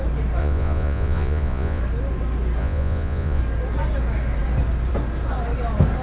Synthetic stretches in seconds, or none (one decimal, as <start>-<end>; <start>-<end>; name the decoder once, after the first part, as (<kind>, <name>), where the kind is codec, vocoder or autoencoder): 0.4-1.8 (vocoder, Vocos); 2.6-3.4